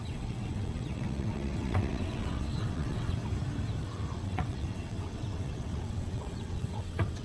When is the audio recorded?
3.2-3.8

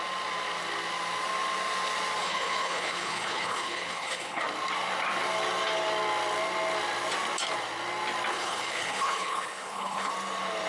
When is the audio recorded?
0.0-2.2; 4.4-8.3; 10.1-10.7